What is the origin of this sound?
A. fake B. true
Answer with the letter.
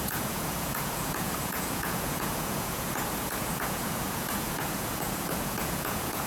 A